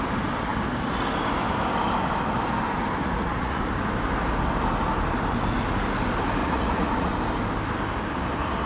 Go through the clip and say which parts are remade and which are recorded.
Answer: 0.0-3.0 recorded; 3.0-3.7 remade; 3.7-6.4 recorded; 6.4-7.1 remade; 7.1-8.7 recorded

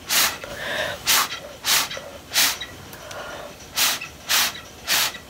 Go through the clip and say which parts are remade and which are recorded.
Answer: 0.0-0.5 recorded; 0.5-1.1 remade; 1.1-5.3 recorded

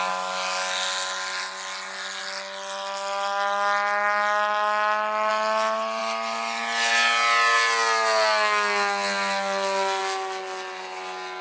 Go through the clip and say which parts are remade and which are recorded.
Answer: 0.0-11.4 recorded

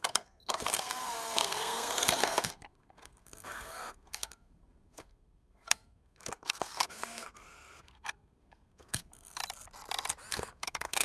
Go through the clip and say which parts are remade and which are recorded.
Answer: 0.0-9.4 remade; 9.4-10.3 recorded; 10.3-11.0 remade

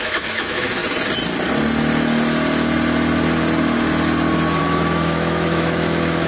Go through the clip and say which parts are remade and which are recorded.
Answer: 0.0-0.8 remade; 0.8-4.6 recorded; 4.6-6.3 remade

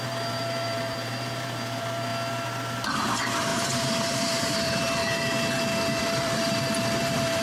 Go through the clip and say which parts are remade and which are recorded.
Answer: 0.0-2.1 remade; 2.1-2.9 recorded; 2.9-5.0 remade; 5.0-6.0 recorded; 6.0-7.4 remade

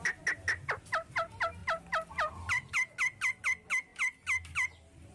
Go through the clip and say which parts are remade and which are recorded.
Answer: 0.0-5.1 recorded